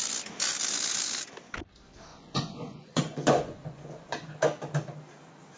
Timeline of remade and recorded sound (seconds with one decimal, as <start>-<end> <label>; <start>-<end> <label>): 0.0-2.1 recorded; 2.1-4.3 remade; 4.3-5.6 recorded